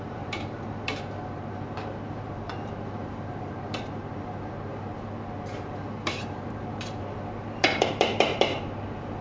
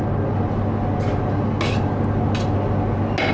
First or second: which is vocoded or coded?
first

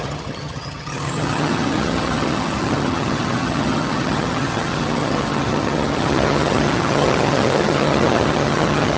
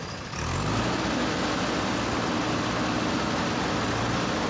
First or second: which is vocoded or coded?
first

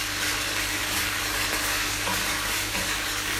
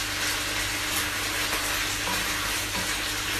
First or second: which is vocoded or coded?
first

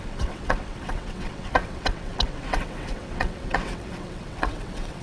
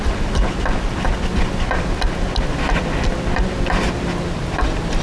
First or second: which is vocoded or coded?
first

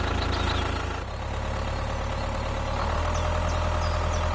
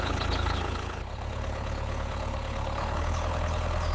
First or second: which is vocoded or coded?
second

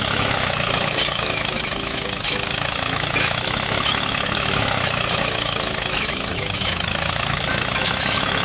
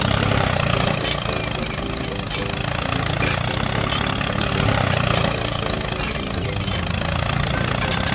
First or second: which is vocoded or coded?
first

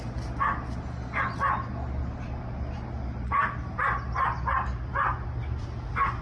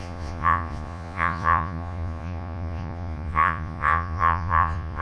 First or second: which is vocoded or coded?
second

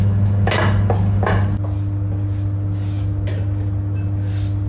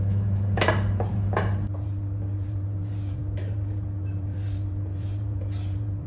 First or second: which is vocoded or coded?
second